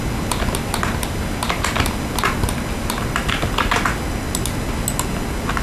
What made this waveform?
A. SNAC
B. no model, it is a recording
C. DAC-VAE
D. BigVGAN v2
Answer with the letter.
B